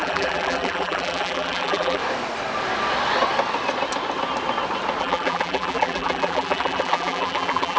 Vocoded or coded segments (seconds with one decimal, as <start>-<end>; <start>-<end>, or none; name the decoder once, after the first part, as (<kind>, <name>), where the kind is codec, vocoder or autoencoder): 0.0-2.0 (vocoder, BigVGAN v2); 5.0-7.8